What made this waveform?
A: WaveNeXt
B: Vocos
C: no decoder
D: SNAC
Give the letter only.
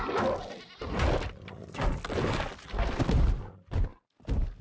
C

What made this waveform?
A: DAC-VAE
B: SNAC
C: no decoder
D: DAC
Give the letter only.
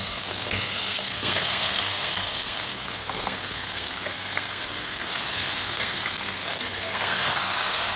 B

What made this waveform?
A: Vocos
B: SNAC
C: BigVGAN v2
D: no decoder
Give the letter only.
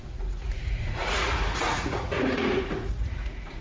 A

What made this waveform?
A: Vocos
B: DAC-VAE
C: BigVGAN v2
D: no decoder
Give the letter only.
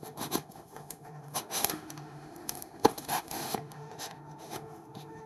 B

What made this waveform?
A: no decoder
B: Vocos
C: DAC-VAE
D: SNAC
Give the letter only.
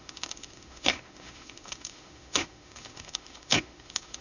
C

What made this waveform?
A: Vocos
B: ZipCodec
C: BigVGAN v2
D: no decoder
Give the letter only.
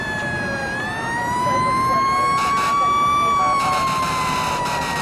C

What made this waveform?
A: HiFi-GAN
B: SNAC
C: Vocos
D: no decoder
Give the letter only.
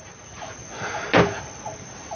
D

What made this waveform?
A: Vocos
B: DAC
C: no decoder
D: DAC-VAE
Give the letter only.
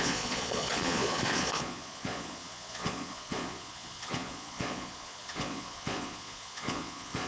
A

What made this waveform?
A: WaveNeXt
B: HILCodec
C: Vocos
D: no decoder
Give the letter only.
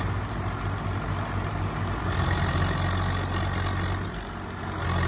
D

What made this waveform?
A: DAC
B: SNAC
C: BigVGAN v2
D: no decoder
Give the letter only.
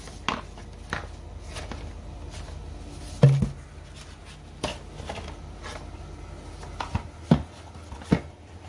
D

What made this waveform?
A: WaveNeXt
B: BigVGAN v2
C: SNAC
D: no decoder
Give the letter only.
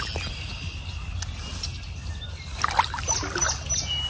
D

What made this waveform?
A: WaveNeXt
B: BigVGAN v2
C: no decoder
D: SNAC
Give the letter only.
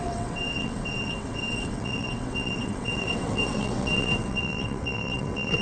A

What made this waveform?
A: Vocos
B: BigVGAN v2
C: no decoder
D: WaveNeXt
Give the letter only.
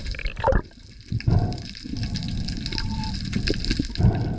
C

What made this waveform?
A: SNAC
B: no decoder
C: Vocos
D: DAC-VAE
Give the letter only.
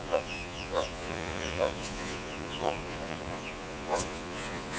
C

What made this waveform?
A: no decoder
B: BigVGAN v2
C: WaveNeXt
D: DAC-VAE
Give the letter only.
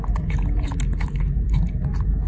A